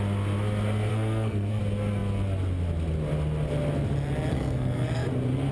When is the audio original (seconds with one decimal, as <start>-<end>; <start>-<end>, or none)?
0.0-0.9; 1.6-4.3; 5.1-5.5